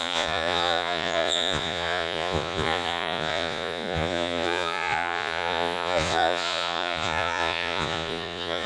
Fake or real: fake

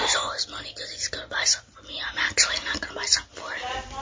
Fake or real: real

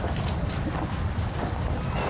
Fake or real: real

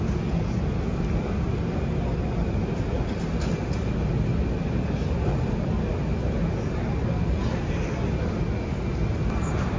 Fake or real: real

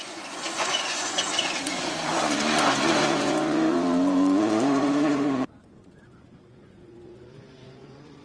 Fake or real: fake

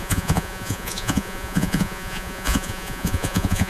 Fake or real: fake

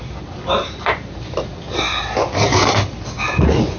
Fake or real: real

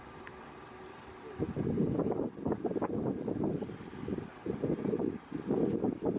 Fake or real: real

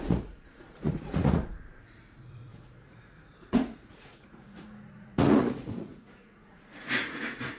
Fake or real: fake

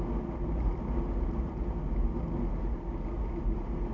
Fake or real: real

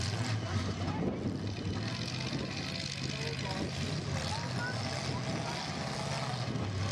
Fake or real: real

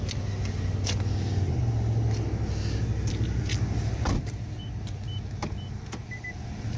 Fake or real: real